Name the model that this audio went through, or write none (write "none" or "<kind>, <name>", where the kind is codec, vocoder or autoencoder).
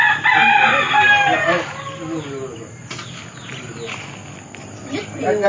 none